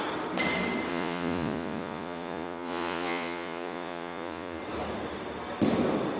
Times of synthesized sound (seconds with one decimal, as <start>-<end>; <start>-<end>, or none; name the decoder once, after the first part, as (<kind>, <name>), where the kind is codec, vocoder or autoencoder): 0.9-4.6 (vocoder, Vocos)